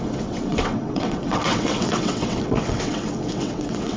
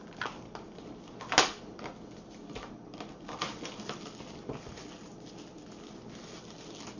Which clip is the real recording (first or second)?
second